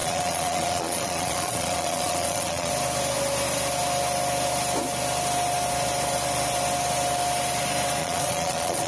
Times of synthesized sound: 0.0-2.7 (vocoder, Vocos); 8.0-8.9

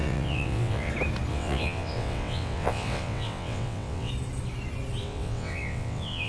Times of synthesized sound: 0.0-0.9 (vocoder, WaveNeXt); 1.3-4.1; 5.0-6.3

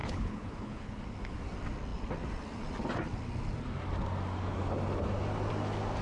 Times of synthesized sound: 0.0-1.0 (codec, HILCodec)

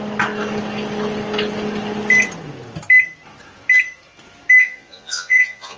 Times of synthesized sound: 4.6-5.8 (vocoder, Vocos)